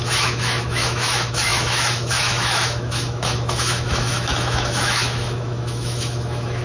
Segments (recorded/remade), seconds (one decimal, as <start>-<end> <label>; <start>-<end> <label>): 0.0-6.6 remade